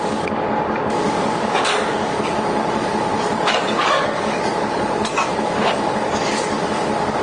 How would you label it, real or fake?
fake